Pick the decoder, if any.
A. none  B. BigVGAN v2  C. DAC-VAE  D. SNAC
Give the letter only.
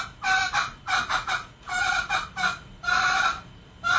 A